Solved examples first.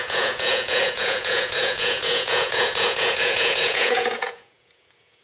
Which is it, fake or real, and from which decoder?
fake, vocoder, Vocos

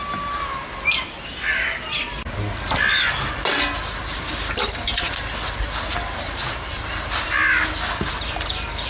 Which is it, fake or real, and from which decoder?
real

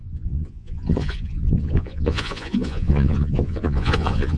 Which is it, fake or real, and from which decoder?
fake, vocoder, Vocos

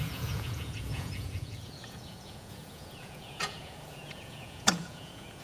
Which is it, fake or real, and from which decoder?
fake, vocoder, Vocos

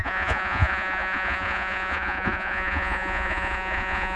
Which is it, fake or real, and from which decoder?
fake, vocoder, Vocos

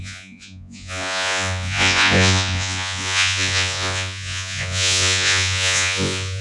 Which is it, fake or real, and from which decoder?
fake, vocoder, Vocos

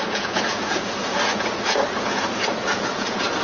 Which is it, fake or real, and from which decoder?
fake, vocoder, Vocos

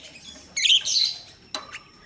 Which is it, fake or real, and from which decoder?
real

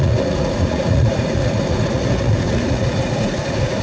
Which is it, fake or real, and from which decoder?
fake, vocoder, Vocos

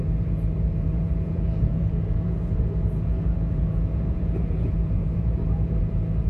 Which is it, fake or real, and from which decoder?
fake, vocoder, Vocos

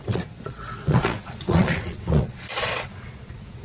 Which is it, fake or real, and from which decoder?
fake, vocoder, Vocos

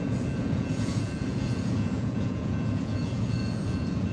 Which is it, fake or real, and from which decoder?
fake, vocoder, Vocos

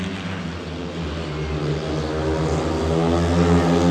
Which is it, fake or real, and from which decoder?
real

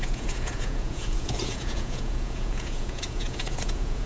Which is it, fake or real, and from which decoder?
fake, vocoder, Vocos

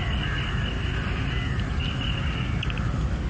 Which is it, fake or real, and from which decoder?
real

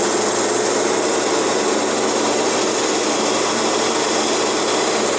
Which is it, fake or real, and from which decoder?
real